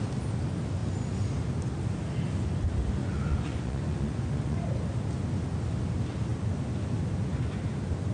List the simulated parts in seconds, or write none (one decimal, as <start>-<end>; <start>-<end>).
3.0-4.6